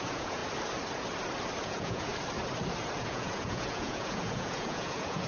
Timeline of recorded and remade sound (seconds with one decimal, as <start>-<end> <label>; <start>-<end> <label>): 0.0-0.4 remade; 0.4-1.6 recorded; 1.6-2.1 remade; 2.1-3.0 recorded; 3.0-5.3 remade